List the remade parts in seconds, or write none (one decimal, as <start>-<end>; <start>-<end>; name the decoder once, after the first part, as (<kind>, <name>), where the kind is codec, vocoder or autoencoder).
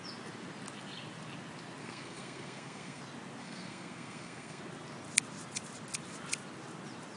1.8-3.0 (codec, SNAC); 3.4-4.6